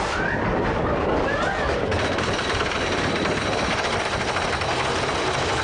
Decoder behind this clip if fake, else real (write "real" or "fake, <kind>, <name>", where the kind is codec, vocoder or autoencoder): real